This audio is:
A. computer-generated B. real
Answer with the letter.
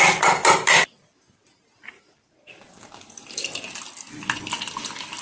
B